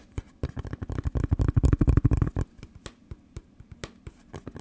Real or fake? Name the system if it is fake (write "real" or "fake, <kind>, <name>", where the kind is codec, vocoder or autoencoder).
real